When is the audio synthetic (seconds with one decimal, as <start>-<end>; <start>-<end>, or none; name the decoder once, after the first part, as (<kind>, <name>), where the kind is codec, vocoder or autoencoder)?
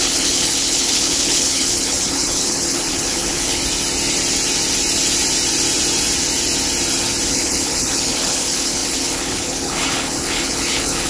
0.0-3.6 (codec, HILCodec); 7.3-11.1